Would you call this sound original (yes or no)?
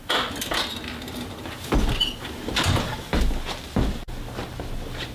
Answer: yes